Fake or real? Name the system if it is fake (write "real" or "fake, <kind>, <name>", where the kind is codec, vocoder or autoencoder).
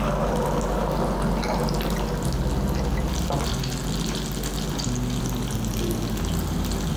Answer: real